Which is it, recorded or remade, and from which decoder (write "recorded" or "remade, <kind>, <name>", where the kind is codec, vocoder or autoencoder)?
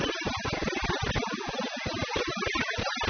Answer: recorded